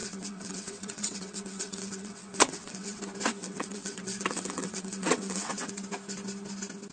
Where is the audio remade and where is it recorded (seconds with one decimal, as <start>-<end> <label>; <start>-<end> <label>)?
0.0-3.0 remade; 3.0-3.4 recorded; 3.4-5.7 remade; 5.7-6.9 recorded